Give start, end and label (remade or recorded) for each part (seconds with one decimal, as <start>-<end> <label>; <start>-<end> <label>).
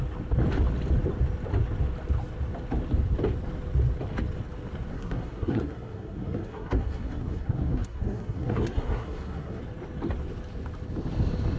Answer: 0.0-4.9 recorded; 4.9-9.6 remade; 9.6-11.6 recorded